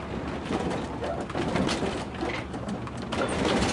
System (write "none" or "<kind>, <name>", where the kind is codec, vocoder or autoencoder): none